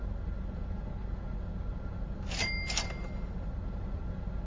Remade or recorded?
recorded